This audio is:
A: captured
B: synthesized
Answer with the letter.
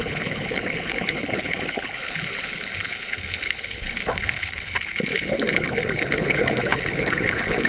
B